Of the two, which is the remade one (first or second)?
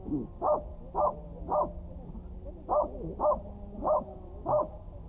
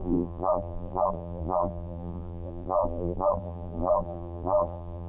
second